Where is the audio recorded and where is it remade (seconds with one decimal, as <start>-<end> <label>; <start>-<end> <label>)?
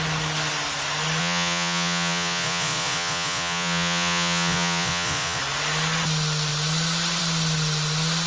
0.0-1.2 recorded; 1.2-5.4 remade; 5.4-8.3 recorded